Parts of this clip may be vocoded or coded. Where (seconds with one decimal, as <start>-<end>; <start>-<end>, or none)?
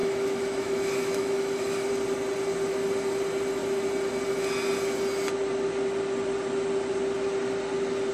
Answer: 0.0-1.9